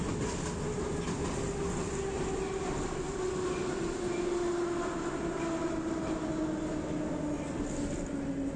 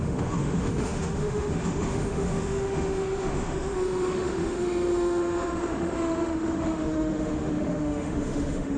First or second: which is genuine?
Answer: first